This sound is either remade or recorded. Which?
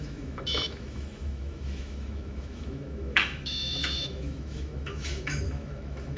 remade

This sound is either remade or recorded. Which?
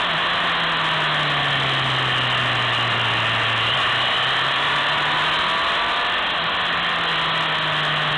recorded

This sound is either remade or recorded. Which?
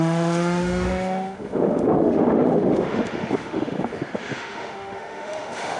remade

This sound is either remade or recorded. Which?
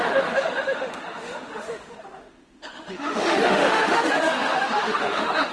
remade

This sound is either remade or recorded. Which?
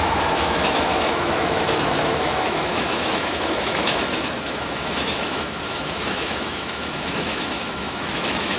remade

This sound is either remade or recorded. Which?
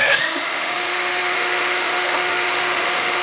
remade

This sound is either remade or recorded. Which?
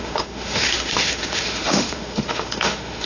remade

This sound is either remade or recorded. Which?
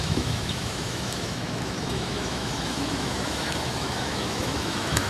remade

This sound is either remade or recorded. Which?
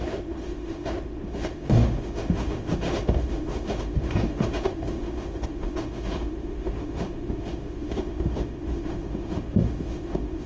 remade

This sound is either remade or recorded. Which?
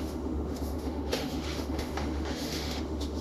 remade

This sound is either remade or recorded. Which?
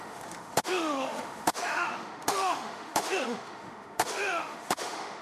remade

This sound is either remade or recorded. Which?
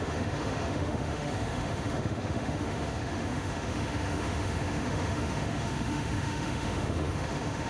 remade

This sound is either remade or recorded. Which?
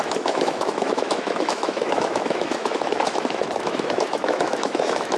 remade